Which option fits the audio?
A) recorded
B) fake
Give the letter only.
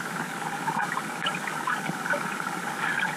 B